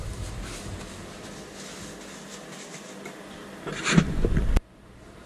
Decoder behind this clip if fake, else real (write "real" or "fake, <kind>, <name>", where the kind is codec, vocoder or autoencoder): real